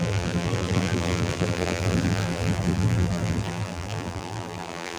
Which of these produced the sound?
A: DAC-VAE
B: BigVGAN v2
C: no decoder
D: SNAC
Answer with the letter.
B